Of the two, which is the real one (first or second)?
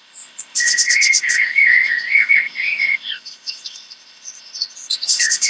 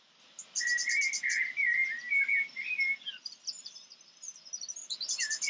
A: second